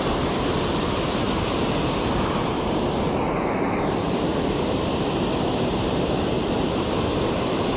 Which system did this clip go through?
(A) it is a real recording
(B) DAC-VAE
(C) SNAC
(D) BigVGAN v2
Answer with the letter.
D